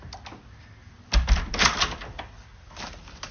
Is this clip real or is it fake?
real